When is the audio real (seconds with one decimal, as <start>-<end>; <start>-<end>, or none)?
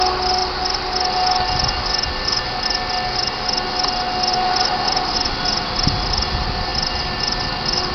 0.0-4.3; 5.1-7.9